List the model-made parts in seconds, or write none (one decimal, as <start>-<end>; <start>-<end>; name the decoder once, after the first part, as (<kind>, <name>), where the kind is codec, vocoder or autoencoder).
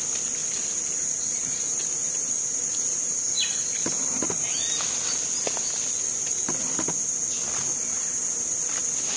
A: 0.4-3.7 (vocoder, Vocos)